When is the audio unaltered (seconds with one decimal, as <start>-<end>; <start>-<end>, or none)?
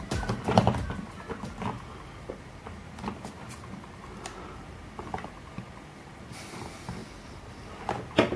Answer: 0.0-7.0; 7.8-8.4